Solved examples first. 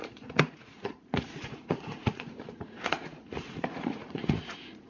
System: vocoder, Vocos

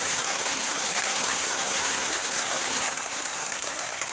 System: codec, SNAC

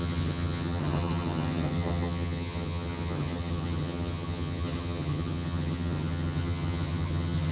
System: vocoder, HiFi-GAN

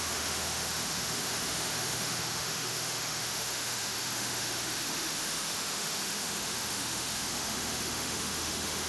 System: autoencoder, DAC-VAE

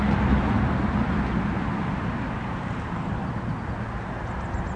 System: none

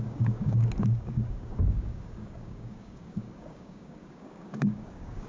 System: codec, DAC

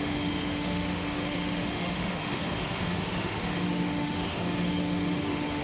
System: autoencoder, DAC-VAE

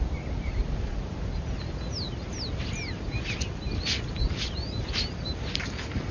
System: none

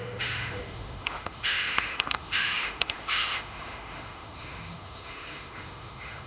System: autoencoder, DAC-VAE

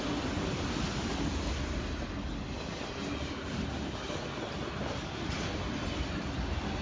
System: none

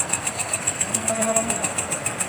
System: codec, SNAC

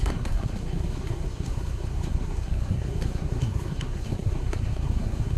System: codec, SNAC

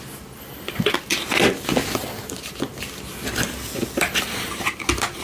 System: none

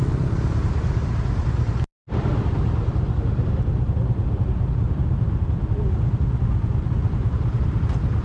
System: none